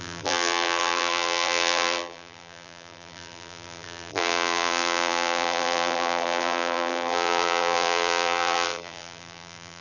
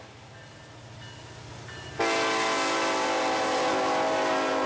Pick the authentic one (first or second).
second